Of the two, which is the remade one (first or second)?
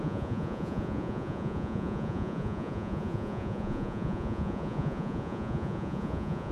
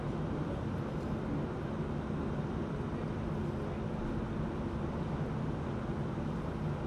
first